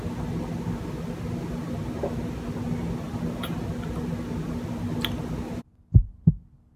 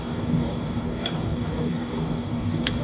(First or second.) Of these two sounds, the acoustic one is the first